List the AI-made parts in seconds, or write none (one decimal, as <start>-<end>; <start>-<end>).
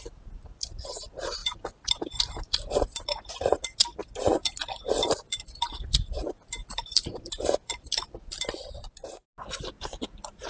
1.4-3.0; 4.0-9.1